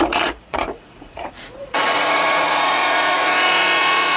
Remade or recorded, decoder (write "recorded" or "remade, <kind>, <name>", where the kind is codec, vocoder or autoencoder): remade, vocoder, Vocos